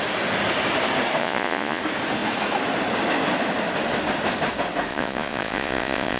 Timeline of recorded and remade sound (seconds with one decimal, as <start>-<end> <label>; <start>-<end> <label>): 0.0-1.2 recorded; 1.2-1.8 remade; 1.8-4.9 recorded; 4.9-6.2 remade